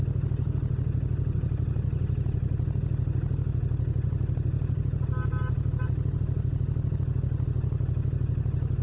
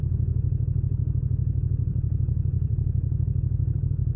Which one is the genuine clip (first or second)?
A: first